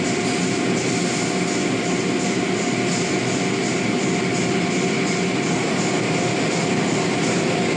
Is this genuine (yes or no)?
yes